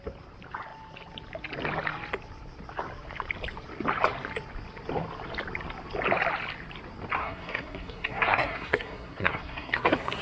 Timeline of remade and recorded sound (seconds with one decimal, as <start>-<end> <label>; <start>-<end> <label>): 0.0-7.2 recorded; 7.2-10.2 remade